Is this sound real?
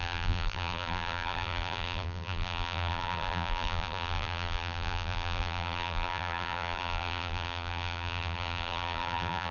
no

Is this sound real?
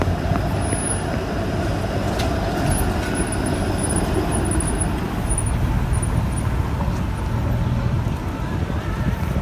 yes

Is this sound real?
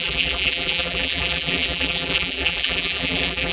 no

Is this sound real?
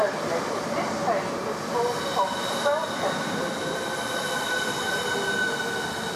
yes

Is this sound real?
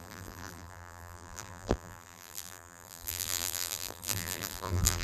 no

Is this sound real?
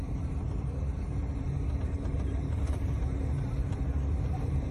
no